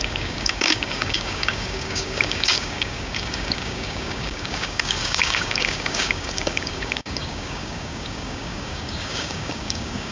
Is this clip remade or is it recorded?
remade